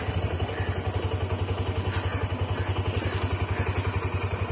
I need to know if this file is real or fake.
real